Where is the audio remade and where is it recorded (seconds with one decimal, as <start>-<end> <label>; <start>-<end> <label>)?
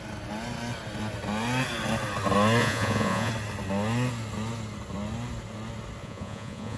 0.0-2.6 recorded; 2.6-3.3 remade; 3.3-6.0 recorded; 6.0-6.8 remade